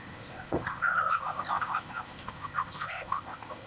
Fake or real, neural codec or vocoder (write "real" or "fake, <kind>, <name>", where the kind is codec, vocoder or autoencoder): fake, codec, ZipCodec